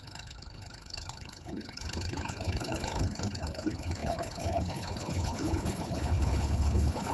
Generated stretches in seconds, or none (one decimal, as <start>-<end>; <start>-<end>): 0.0-7.1